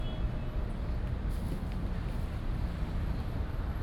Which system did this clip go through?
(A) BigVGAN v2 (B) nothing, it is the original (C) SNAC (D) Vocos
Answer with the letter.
B